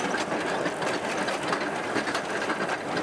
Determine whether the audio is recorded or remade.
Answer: recorded